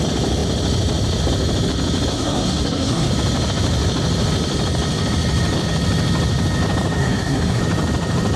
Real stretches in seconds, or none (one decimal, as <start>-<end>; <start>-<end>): 0.0-2.1; 3.1-7.0; 7.6-8.4